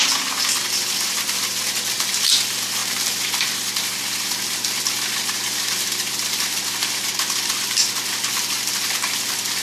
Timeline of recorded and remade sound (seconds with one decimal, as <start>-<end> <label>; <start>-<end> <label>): 0.0-9.6 recorded

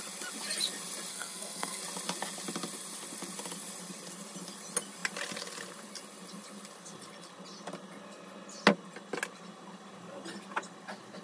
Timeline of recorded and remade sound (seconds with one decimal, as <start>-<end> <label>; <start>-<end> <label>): 0.0-1.1 recorded; 1.1-1.8 remade; 1.8-11.2 recorded

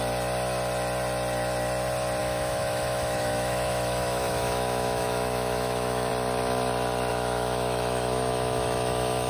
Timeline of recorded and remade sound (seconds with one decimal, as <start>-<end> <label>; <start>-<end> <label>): 0.0-2.2 recorded; 2.2-6.1 remade; 6.1-7.1 recorded; 7.1-9.3 remade

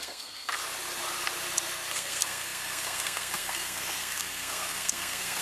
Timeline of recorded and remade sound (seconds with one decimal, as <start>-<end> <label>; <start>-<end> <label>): 0.0-0.6 remade; 0.6-1.9 recorded; 1.9-5.4 remade